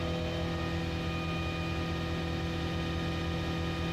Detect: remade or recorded recorded